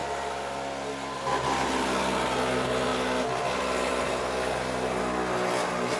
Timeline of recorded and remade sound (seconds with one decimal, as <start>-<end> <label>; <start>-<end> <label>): 0.0-6.0 recorded